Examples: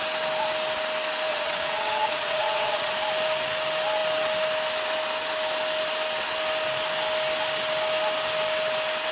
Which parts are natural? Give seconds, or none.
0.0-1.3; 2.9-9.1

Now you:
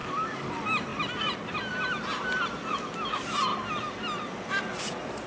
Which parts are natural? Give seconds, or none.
0.5-5.3

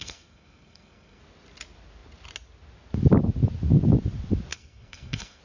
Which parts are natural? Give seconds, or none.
1.2-4.5

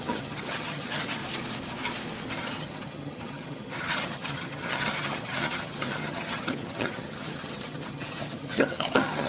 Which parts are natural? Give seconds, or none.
1.2-2.4

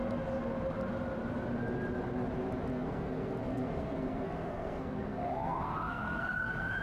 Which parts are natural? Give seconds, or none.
0.0-2.7

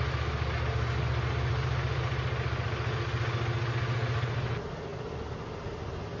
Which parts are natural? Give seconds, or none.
0.0-6.2

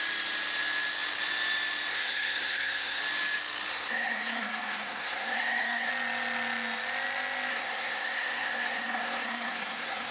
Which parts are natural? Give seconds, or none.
0.0-1.9; 3.0-3.7; 5.9-7.5

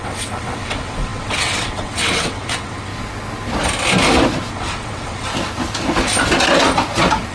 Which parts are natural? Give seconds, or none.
2.9-4.5; 5.3-7.3